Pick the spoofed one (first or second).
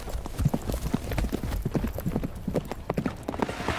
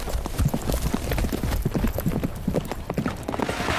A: second